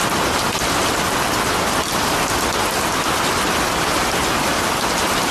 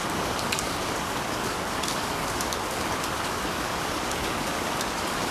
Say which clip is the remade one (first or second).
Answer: second